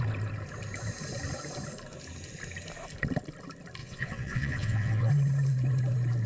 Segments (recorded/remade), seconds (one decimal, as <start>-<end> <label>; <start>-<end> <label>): 0.0-3.8 recorded; 3.8-5.1 remade; 5.1-6.3 recorded